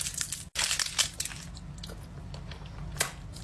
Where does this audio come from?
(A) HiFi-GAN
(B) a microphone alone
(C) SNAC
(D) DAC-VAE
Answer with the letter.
B